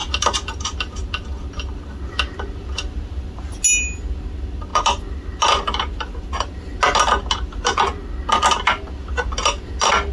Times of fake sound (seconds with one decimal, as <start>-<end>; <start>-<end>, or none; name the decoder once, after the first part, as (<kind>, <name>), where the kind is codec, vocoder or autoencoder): none